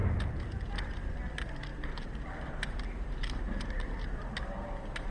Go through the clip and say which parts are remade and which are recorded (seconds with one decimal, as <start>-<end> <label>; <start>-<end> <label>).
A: 0.0-1.7 recorded; 1.7-5.1 remade